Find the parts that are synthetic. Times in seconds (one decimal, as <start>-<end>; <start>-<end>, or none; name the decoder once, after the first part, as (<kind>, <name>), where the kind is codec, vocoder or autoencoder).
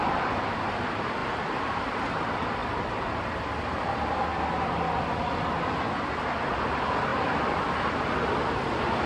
1.2-2.1 (vocoder, BigVGAN v2); 2.6-5.3; 7.1-7.6